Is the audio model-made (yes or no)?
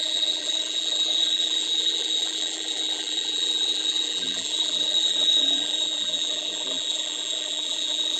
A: yes